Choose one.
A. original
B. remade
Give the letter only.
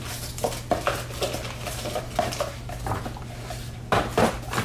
A